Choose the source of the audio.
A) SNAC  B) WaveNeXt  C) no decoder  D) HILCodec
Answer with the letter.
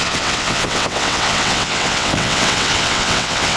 B